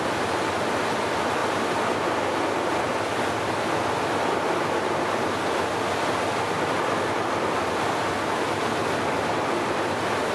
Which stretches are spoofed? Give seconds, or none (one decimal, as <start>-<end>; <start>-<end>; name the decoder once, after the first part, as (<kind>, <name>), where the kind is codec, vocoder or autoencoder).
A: none